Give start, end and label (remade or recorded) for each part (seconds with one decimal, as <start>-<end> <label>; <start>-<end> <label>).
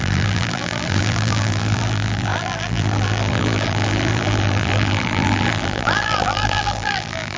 0.0-7.4 remade